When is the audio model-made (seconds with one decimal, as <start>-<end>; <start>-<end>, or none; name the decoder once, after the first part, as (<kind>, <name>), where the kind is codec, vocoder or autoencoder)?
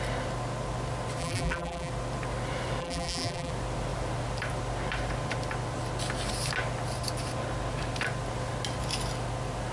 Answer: 1.2-1.9 (vocoder, BigVGAN v2); 2.8-3.5